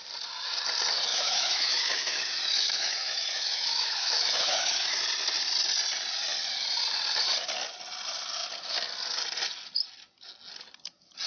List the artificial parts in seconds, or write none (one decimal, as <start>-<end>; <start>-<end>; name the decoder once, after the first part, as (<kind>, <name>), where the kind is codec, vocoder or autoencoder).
1.1-5.0 (autoencoder, DAC-VAE)